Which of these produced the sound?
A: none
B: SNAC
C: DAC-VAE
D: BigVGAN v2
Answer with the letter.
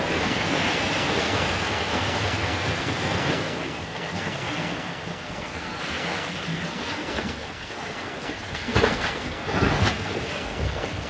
B